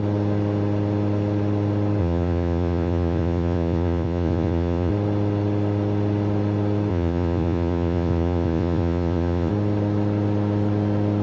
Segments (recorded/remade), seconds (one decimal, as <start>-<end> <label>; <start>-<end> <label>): 0.0-2.0 recorded; 2.0-4.9 remade; 4.9-6.9 recorded; 6.9-9.5 remade; 9.5-11.2 recorded